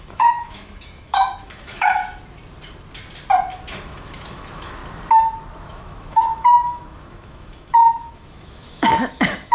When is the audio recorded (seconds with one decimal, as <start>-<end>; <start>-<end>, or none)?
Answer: 2.0-3.7; 4.8-5.6